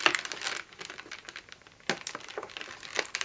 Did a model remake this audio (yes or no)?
no